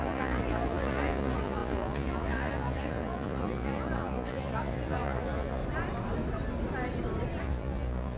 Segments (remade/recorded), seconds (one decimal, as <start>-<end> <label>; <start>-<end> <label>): 0.0-5.6 remade; 5.6-7.4 recorded; 7.4-8.2 remade